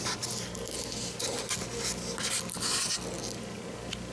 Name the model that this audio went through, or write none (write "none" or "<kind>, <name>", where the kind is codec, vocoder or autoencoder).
none